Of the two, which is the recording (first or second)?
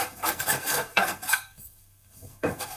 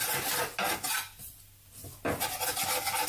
second